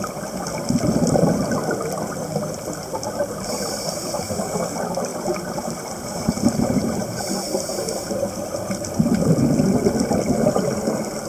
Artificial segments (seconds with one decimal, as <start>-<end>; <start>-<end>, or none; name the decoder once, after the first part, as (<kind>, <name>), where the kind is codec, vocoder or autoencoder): 5.1-7.2 (vocoder, BigVGAN v2)